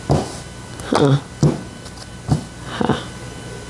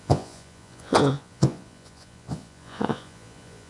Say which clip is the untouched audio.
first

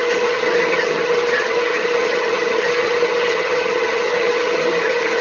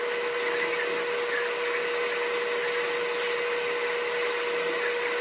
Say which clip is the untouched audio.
second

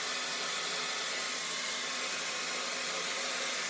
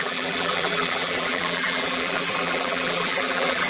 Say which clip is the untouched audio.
first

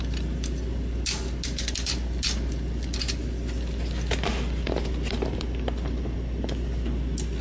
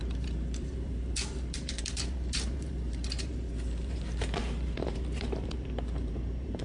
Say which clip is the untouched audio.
first